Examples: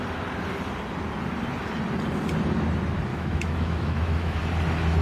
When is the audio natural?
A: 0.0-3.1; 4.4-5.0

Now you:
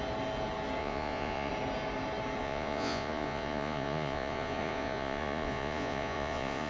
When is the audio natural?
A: 0.0-0.8; 1.5-2.4

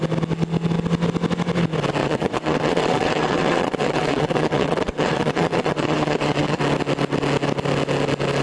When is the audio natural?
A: 0.0-2.0; 6.6-8.4